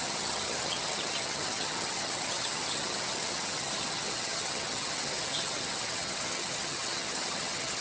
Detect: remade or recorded remade